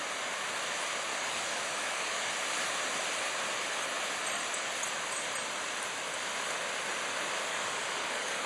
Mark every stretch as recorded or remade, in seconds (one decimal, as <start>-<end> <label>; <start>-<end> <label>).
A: 0.0-1.1 recorded; 1.1-2.3 remade; 2.3-7.5 recorded; 7.5-8.5 remade